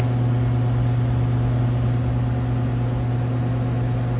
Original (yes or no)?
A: yes